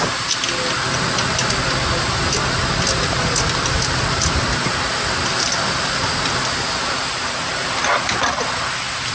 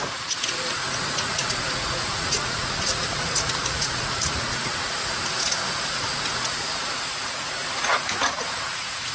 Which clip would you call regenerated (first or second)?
second